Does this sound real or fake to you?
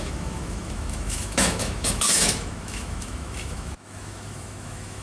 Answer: fake